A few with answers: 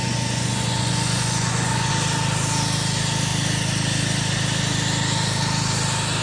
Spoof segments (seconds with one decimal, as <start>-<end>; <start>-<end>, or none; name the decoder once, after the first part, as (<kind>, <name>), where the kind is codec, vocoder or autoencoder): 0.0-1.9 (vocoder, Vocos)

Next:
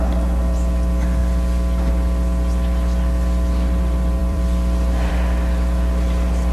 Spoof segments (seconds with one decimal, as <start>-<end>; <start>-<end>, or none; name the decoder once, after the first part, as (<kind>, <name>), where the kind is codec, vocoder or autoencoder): 4.2-5.1 (vocoder, BigVGAN v2)

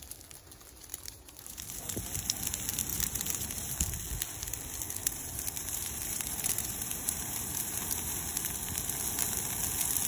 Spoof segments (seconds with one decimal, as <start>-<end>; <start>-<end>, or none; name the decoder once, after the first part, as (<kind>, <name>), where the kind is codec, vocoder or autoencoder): 0.9-2.0 (vocoder, BigVGAN v2); 2.9-3.9; 5.0-8.1

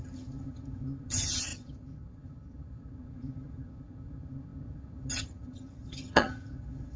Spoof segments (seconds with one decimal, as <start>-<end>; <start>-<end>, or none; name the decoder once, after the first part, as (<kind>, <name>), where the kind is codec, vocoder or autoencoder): 0.0-7.0 (vocoder, HiFi-GAN)